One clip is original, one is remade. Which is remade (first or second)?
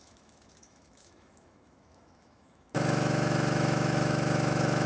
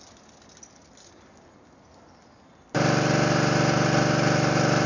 first